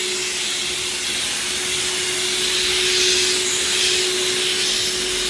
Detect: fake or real real